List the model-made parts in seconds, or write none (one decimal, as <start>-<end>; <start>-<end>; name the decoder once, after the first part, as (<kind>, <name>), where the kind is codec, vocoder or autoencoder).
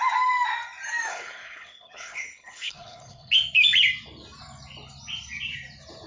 1.1-3.3 (codec, HILCodec)